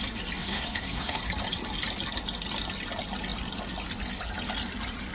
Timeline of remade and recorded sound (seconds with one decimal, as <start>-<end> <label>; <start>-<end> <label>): 0.0-0.4 recorded; 0.4-1.2 remade; 1.2-5.1 recorded